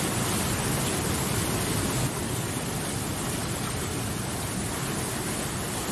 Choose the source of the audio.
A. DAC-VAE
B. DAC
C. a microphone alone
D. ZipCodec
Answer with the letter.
C